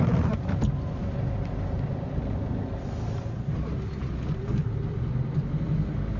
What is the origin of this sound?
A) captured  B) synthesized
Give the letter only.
A